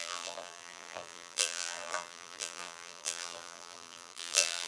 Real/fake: fake